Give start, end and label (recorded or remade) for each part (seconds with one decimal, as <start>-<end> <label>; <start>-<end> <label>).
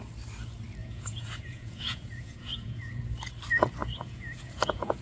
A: 0.0-0.8 recorded; 0.8-3.0 remade; 3.0-3.8 recorded; 3.8-5.0 remade